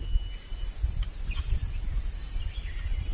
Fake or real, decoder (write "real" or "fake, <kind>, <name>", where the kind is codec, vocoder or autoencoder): real